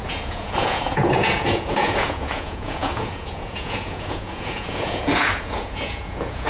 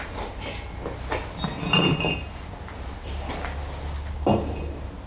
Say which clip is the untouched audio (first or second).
second